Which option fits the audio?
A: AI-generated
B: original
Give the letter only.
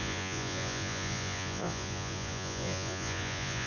A